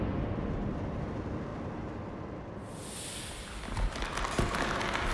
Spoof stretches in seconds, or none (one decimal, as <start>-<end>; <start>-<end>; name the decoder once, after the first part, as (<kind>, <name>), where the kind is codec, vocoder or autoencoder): none

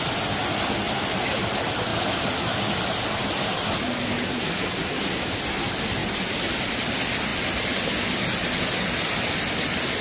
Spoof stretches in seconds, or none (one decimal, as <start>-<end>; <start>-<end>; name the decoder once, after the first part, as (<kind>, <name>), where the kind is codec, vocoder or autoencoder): none